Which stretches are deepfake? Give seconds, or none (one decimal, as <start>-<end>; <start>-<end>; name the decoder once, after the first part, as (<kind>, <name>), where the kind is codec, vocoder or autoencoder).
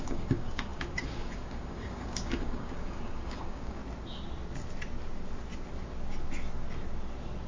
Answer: 0.0-3.8 (codec, DAC)